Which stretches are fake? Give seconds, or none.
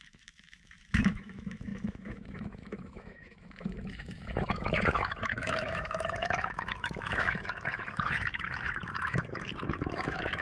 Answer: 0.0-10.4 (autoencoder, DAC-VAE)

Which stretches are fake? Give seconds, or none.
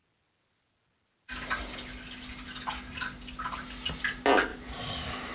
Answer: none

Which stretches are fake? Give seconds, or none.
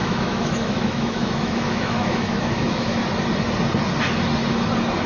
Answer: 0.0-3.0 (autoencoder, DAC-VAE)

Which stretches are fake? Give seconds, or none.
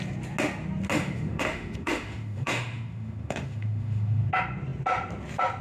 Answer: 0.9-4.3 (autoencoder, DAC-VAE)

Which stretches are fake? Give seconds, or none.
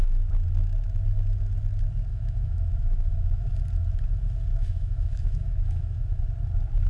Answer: 2.1-3.6 (autoencoder, DAC-VAE); 4.5-6.2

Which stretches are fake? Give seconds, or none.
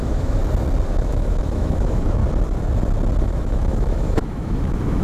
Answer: 0.0-0.4 (autoencoder, DAC-VAE); 0.9-2.2; 3.2-5.0